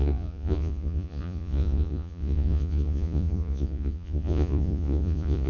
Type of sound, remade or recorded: remade